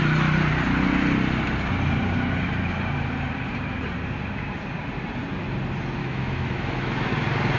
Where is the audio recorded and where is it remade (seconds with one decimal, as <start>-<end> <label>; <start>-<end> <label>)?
0.0-6.0 recorded; 6.0-7.1 remade; 7.1-7.6 recorded